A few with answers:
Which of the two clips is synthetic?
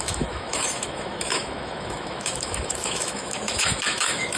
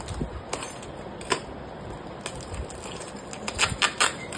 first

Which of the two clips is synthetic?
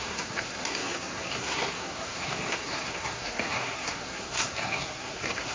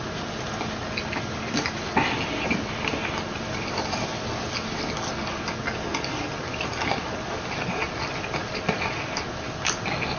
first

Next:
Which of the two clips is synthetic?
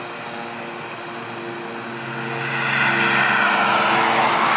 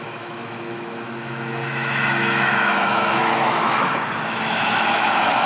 second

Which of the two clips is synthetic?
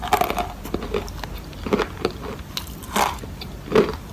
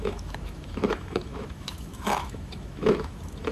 second